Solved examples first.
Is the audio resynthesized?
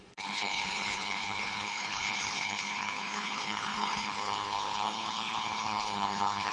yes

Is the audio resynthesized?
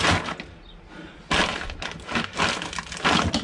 no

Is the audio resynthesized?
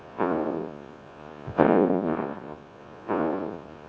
yes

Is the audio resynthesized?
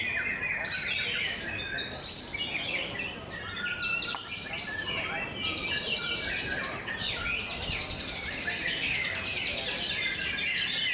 no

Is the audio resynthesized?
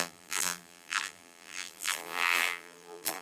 yes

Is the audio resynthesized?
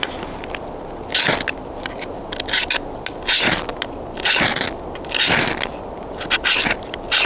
no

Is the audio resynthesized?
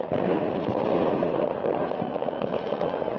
yes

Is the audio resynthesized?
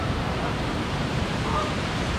yes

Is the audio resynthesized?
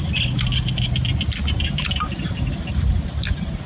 no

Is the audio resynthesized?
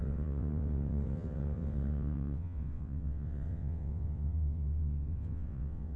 yes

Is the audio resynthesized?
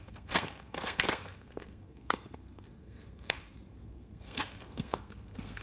yes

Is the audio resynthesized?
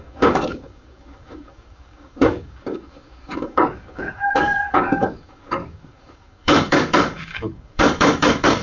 yes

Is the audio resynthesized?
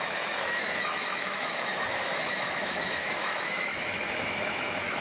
yes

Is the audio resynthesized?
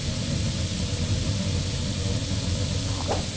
no